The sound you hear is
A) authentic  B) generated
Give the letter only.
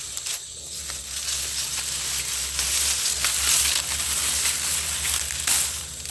A